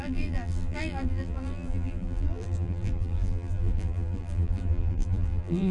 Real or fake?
fake